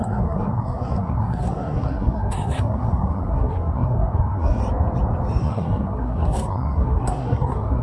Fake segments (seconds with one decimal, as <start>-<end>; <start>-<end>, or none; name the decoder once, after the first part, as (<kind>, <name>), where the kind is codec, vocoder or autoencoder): 0.0-4.6 (codec, SNAC); 5.4-7.8